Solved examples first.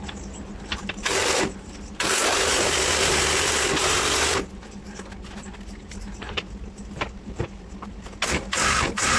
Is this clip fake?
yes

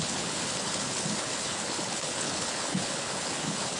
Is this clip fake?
yes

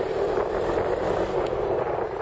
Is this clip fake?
no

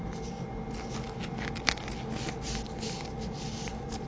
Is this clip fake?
no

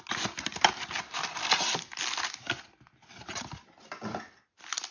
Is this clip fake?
no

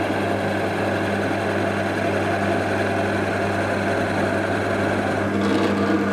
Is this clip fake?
no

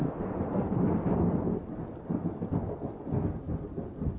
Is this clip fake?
no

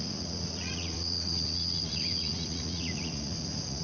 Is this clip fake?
yes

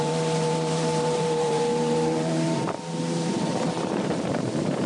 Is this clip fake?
yes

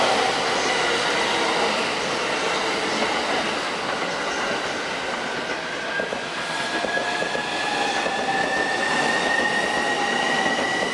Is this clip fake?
no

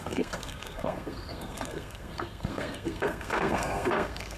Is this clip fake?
yes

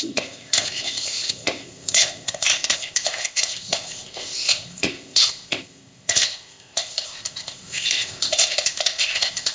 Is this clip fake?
yes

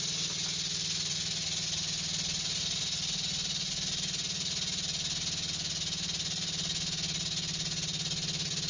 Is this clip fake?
no